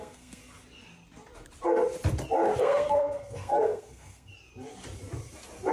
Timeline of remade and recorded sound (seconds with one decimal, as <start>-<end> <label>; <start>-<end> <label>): 0.0-0.4 remade; 0.4-2.6 recorded; 2.6-4.3 remade; 4.3-5.7 recorded